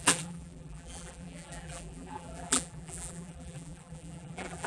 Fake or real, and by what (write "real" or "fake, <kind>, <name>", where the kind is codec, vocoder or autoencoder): fake, vocoder, BigVGAN v2